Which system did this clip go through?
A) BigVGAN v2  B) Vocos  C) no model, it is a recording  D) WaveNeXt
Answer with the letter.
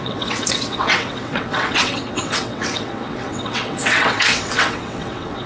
D